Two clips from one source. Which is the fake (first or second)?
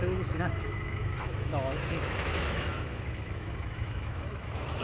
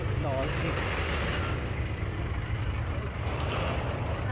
first